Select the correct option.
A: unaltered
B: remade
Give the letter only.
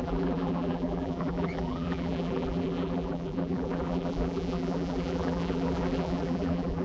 B